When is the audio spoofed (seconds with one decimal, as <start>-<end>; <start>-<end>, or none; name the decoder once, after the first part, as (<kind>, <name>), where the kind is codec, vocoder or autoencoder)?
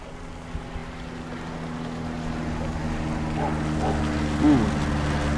none